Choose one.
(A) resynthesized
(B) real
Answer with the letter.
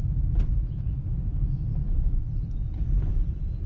A